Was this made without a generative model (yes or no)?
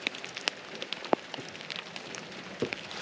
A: yes